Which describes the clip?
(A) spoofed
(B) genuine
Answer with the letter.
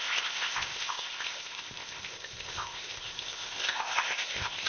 A